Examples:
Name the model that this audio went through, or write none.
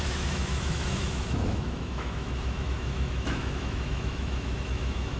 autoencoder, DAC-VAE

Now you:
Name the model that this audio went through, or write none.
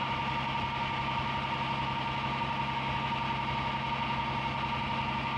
none